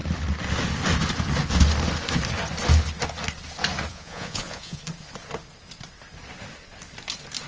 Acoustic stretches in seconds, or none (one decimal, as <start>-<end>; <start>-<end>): 0.0-3.9; 4.8-7.5